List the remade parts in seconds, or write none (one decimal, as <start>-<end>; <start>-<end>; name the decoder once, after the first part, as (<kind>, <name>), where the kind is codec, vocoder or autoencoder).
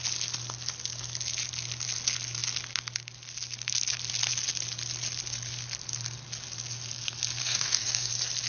7.4-8.1 (codec, DAC)